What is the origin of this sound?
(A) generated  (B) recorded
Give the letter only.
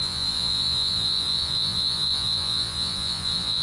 A